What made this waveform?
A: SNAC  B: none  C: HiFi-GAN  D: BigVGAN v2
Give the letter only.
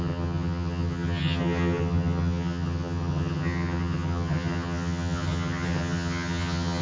C